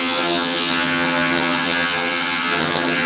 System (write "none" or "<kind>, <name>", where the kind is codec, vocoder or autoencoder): vocoder, HiFi-GAN